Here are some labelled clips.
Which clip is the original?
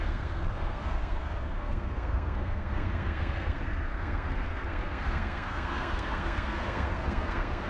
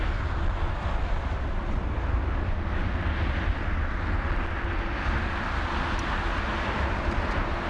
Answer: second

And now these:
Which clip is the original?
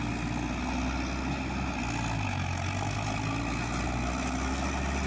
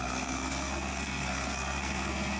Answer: first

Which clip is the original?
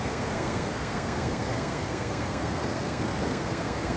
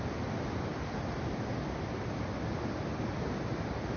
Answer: second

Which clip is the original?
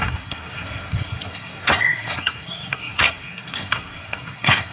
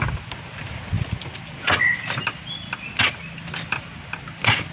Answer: second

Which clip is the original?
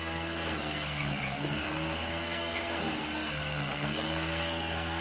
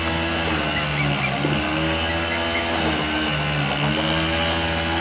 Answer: second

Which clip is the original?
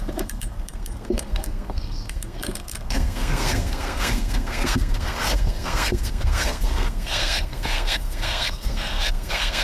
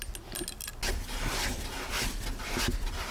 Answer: second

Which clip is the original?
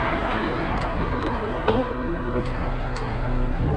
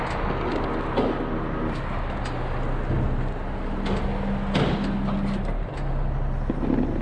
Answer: second